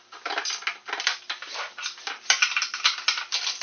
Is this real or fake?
real